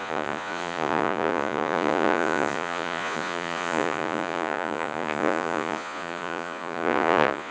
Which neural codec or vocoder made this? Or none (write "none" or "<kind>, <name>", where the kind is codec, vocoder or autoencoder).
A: vocoder, Vocos